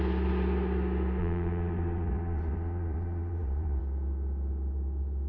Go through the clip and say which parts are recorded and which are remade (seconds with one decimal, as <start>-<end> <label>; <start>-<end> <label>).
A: 0.0-1.2 recorded; 1.2-3.8 remade; 3.8-5.3 recorded